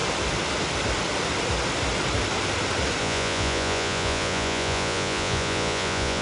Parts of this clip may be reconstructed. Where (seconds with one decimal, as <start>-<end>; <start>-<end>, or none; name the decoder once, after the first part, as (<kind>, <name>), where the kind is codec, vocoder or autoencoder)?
3.0-6.2 (vocoder, Vocos)